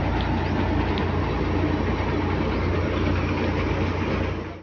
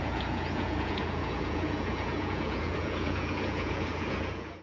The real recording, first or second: first